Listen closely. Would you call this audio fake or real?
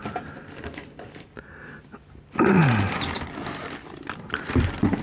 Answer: real